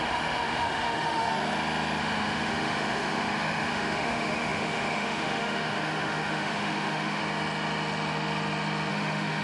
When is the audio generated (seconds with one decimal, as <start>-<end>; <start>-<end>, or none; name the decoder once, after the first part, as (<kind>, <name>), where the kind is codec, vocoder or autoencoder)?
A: 0.0-1.3 (autoencoder, DAC-VAE); 2.0-7.2; 8.9-9.4